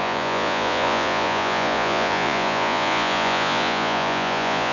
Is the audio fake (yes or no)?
yes